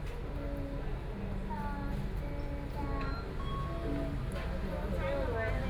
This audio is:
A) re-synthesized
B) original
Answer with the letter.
B